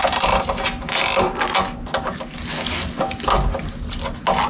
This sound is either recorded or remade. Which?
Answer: recorded